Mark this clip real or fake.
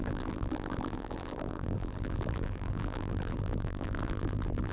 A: fake